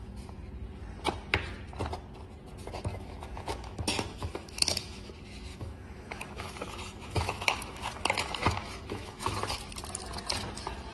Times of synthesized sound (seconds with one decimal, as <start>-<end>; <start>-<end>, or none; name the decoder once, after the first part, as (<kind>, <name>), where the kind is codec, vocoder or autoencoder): 2.9-5.1 (autoencoder, DAC-VAE); 5.5-9.5

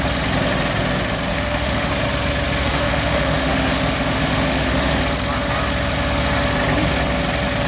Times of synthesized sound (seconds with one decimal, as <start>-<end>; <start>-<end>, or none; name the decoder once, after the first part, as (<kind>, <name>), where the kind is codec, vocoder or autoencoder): 1.3-1.9 (autoencoder, DAC-VAE); 2.6-5.0

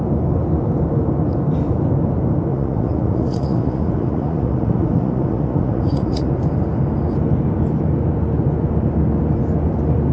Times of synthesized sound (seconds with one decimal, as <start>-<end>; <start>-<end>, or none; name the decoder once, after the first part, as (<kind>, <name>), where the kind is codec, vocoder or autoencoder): 2.5-6.3 (vocoder, Vocos)

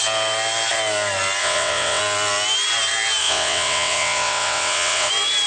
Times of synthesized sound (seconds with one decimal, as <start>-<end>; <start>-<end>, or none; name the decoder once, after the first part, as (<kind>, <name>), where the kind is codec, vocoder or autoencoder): 1.4-2.0 (vocoder, WaveNeXt); 3.2-5.1

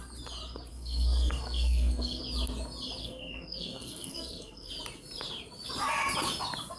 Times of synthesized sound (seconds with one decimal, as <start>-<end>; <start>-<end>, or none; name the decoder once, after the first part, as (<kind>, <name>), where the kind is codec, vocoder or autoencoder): 0.7-2.2 (codec, SNAC); 3.0-4.7

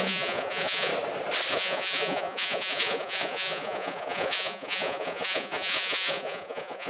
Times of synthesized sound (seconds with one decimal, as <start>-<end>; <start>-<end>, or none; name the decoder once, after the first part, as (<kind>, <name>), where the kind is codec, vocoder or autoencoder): 0.0-0.9 (vocoder, Vocos); 1.5-6.9

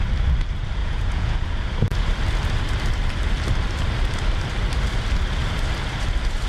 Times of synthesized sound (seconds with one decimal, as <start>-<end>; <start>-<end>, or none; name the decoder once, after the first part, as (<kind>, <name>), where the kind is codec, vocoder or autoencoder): 0.8-1.4 (vocoder, Vocos)